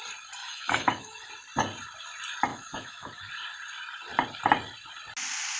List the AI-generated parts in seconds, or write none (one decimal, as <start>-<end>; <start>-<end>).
0.4-1.3; 2.5-3.3